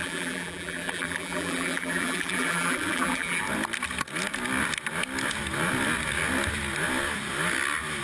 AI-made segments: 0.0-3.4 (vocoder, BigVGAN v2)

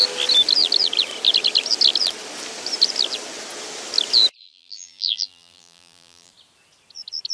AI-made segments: 4.4-6.3 (vocoder, BigVGAN v2)

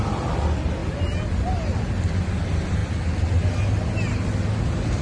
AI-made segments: 0.0-2.8 (vocoder, BigVGAN v2); 4.1-5.0